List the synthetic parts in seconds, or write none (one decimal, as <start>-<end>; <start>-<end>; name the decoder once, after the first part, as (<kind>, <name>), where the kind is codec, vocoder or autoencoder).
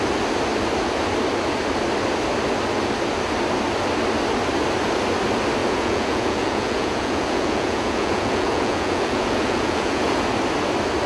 5.6-10.2 (vocoder, Vocos)